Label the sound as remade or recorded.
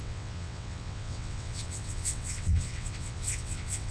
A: remade